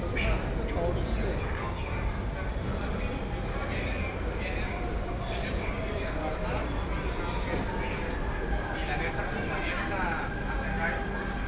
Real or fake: real